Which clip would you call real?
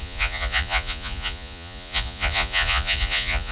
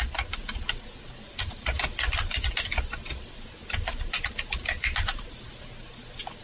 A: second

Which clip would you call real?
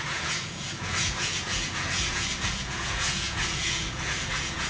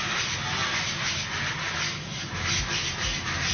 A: second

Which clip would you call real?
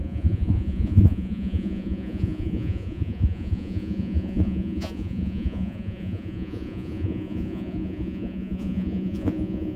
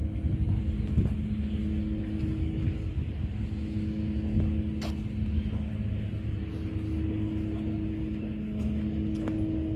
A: second